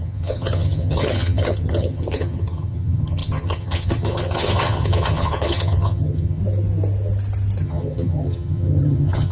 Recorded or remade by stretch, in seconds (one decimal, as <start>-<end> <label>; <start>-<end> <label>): 0.0-6.4 remade; 6.4-7.6 recorded; 7.6-9.3 remade